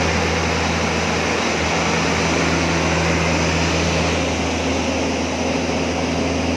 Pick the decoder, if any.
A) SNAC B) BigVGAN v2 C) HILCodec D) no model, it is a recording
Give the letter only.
D